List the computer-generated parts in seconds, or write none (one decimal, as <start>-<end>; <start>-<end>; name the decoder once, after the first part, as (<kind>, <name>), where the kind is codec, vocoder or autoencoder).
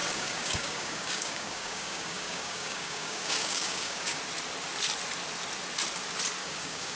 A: 0.0-4.2 (codec, DAC); 6.4-7.0